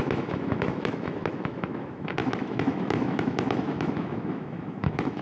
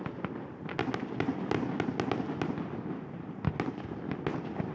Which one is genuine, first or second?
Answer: second